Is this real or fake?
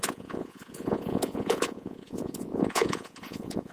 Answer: fake